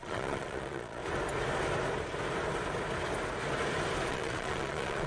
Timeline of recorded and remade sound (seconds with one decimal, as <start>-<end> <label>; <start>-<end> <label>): 0.0-1.0 remade; 1.0-4.1 recorded; 4.1-5.1 remade